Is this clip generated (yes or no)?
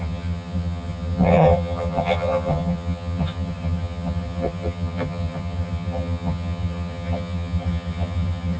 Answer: yes